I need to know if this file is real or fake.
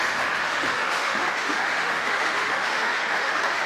fake